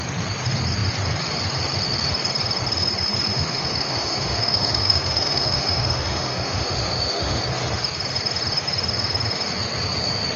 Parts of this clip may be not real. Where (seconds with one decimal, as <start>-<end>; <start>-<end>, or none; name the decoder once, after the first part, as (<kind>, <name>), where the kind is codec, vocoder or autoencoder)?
3.3-7.4 (autoencoder, DAC-VAE)